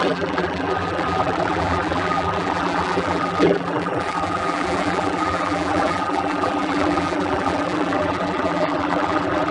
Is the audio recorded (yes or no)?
no